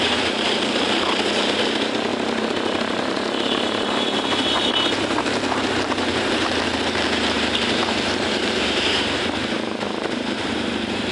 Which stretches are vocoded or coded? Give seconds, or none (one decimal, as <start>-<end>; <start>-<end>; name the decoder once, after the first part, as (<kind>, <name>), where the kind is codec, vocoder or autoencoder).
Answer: 0.0-11.1 (vocoder, BigVGAN v2)